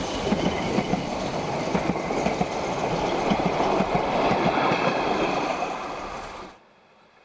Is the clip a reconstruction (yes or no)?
no